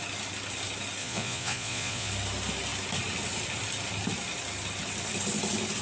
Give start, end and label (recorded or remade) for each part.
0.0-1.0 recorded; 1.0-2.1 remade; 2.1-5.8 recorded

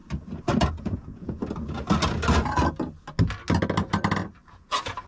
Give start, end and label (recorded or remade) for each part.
0.0-0.8 recorded; 0.8-1.4 remade; 1.4-4.5 recorded; 4.5-5.1 remade